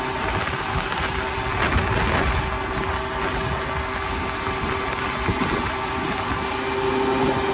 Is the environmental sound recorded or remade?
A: recorded